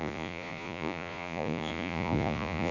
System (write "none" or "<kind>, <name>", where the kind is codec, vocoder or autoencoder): vocoder, Vocos